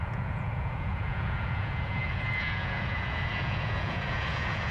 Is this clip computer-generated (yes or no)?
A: yes